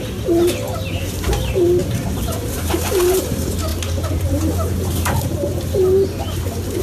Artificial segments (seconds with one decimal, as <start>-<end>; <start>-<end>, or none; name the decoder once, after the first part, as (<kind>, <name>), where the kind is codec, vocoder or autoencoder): 1.8-2.7 (vocoder, BigVGAN v2)